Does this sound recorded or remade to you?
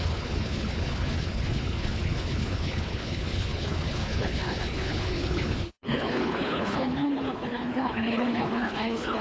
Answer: remade